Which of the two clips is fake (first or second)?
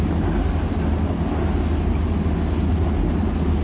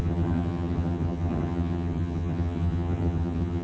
second